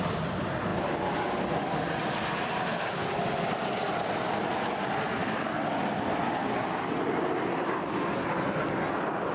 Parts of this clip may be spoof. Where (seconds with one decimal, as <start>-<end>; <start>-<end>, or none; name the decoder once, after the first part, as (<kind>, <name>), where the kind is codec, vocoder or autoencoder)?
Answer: none